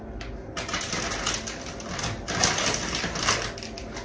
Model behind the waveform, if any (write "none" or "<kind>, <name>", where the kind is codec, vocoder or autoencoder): none